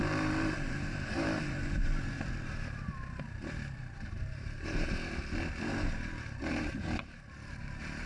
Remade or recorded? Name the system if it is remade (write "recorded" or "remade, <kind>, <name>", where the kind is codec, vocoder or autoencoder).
remade, vocoder, BigVGAN v2